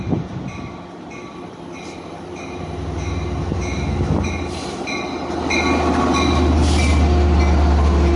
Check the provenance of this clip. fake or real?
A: real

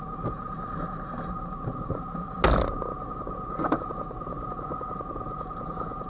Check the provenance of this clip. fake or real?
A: real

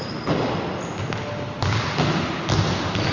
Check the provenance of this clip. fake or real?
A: real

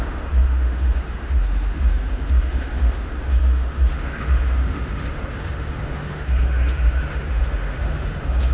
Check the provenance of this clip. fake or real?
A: fake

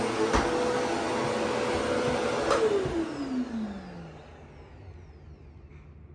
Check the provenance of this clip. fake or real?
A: real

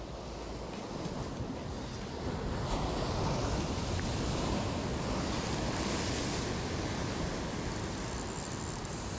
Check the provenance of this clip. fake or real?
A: real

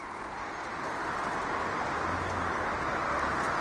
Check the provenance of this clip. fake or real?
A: real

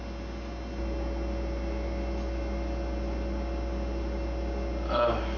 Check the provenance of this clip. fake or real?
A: real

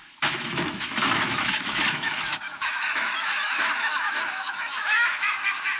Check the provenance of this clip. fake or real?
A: fake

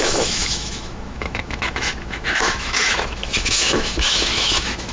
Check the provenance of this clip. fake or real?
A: fake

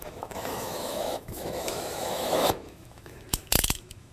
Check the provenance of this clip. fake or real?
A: fake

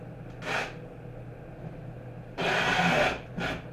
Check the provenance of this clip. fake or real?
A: real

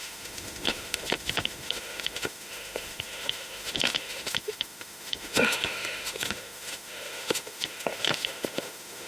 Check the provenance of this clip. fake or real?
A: fake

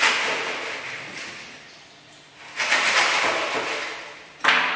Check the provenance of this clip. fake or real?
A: real